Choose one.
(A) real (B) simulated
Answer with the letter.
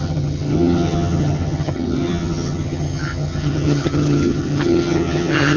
B